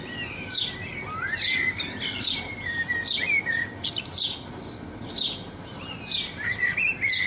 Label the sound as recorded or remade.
recorded